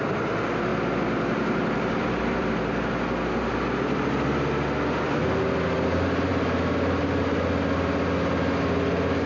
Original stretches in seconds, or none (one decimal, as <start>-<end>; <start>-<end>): 0.0-0.7; 2.5-9.3